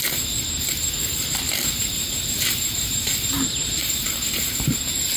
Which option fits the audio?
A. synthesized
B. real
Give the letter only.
A